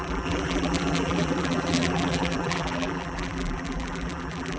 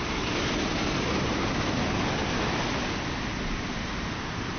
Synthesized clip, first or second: first